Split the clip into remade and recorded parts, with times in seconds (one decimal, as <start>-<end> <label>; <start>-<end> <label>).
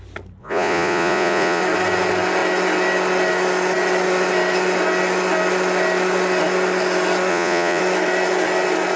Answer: 0.0-0.4 recorded; 0.4-1.6 remade; 1.6-7.3 recorded; 7.3-7.8 remade; 7.8-9.0 recorded